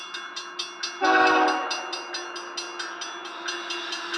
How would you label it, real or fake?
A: real